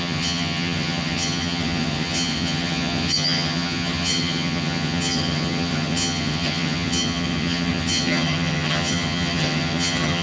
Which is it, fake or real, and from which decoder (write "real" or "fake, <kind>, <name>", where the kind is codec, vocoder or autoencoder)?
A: fake, vocoder, HiFi-GAN